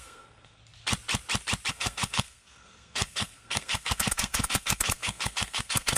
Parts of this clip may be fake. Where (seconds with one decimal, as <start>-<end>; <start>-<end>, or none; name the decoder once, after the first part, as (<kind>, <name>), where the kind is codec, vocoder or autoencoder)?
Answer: 0.0-0.6 (codec, SNAC); 1.7-6.0